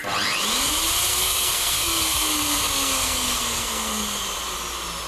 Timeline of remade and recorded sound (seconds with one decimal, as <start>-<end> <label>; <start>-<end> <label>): 0.0-1.1 recorded; 1.1-4.2 remade; 4.2-5.1 recorded